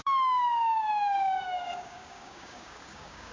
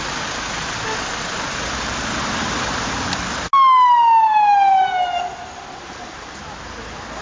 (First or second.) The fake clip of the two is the first